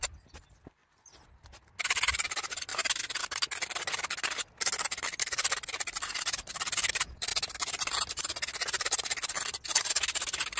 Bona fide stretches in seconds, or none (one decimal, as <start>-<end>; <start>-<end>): 0.8-2.1; 2.7-5.8; 7.3-10.6